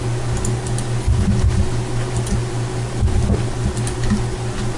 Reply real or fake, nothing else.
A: real